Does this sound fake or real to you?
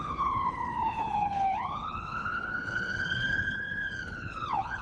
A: fake